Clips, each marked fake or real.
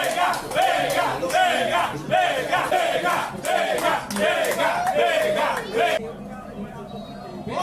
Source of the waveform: real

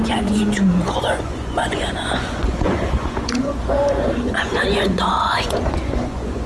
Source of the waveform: fake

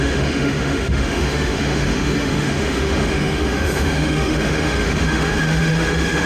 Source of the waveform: fake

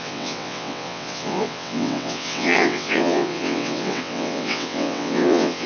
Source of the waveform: fake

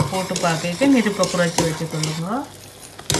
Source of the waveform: real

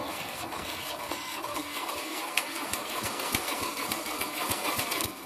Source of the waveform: fake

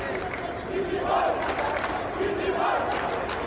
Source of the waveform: real